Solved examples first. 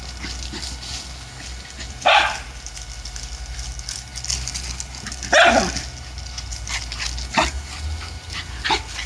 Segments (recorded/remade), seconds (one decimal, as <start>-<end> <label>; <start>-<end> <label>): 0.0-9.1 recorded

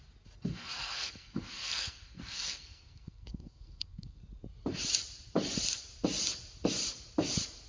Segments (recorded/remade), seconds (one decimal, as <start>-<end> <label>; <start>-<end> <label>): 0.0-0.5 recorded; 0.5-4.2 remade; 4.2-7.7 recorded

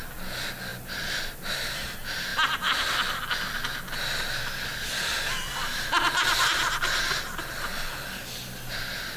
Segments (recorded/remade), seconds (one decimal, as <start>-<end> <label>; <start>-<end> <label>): 0.0-9.2 recorded